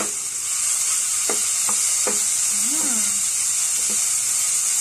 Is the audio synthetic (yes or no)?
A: no